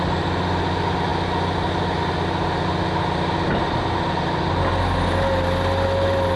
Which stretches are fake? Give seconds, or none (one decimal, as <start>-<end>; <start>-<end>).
none